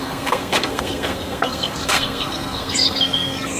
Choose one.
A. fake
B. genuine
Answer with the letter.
A